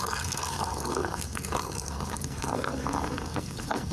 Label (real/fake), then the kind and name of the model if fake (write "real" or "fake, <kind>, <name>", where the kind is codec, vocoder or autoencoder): fake, codec, SNAC